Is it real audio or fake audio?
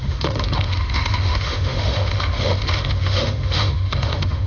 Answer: fake